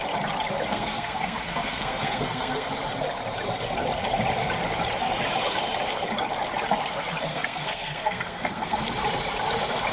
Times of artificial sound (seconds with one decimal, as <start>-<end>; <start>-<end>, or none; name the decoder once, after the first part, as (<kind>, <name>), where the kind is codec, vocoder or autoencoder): 0.7-2.7 (codec, SNAC); 7.3-8.8